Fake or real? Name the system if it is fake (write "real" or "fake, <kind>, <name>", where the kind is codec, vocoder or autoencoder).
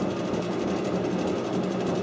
real